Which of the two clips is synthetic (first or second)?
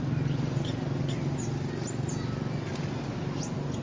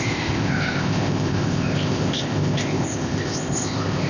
second